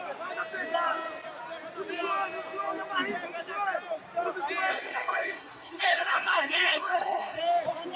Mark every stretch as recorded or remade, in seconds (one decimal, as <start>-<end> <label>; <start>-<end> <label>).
0.0-4.7 recorded; 4.7-7.4 remade; 7.4-8.0 recorded